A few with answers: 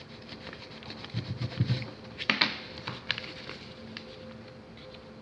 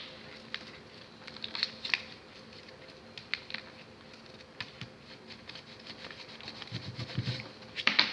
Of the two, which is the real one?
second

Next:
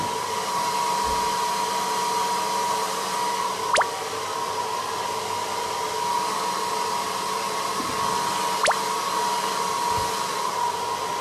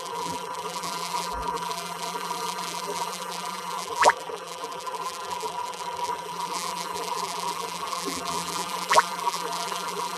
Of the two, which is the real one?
first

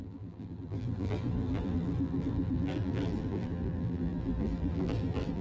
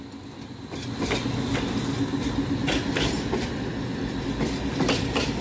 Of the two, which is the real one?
second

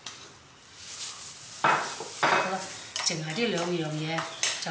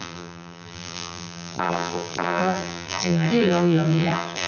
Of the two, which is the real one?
first